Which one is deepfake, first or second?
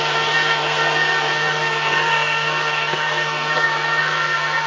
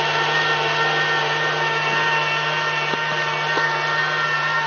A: first